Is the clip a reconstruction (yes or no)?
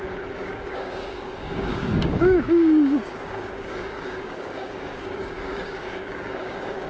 yes